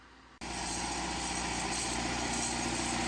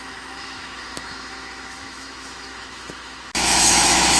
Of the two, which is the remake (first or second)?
second